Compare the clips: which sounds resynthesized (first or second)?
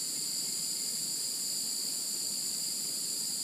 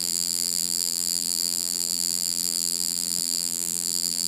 second